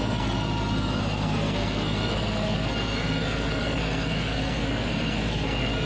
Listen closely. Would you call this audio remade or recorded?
remade